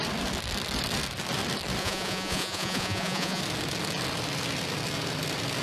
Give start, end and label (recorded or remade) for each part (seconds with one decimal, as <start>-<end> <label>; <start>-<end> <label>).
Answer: 0.0-1.8 recorded; 1.8-3.4 remade; 3.4-5.6 recorded